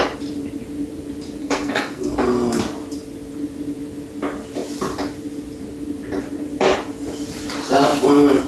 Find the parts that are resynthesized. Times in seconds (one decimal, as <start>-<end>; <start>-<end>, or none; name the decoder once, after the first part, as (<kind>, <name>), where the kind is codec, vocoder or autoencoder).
1.4-2.1 (codec, SNAC)